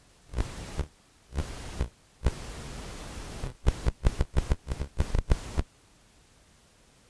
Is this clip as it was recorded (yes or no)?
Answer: yes